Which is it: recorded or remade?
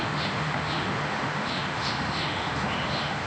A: remade